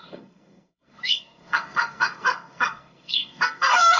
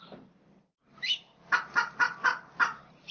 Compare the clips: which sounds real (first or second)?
second